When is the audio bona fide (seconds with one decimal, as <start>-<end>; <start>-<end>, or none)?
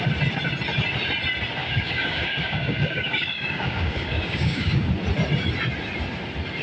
0.0-1.6; 4.9-6.6